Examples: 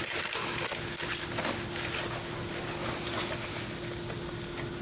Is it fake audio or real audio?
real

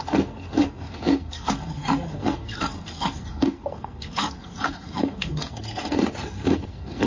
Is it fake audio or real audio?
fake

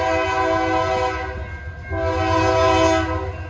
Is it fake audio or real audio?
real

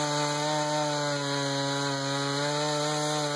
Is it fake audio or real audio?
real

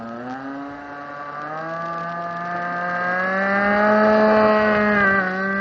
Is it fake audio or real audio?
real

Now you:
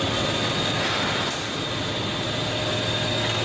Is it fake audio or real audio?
real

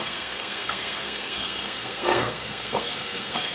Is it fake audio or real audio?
fake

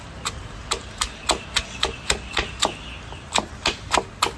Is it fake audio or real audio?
real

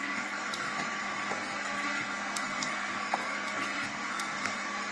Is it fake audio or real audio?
fake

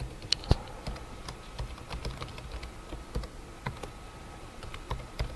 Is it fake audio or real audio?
real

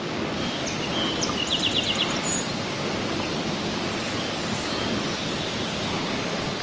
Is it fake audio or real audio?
real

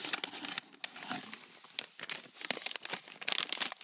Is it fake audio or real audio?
real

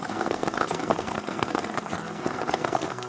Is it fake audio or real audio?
fake